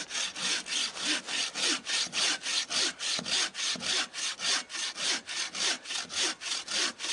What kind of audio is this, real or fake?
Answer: real